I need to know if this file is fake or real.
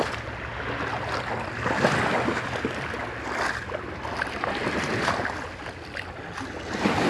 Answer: real